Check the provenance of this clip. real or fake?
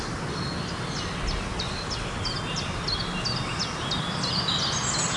real